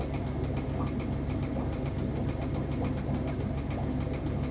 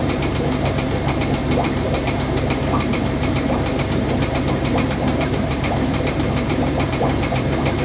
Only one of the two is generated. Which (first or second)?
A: second